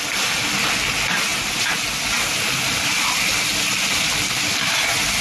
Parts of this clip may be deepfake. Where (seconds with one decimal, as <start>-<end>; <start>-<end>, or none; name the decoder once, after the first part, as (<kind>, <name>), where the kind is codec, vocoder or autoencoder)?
none